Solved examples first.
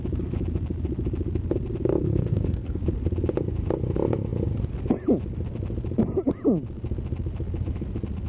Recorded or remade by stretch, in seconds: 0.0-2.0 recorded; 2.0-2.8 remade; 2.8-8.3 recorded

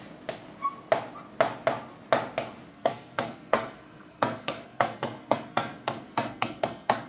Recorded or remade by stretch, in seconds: 0.0-2.7 recorded; 2.7-7.1 remade